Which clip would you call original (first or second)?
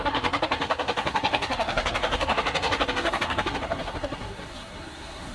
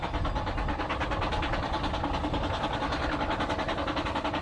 second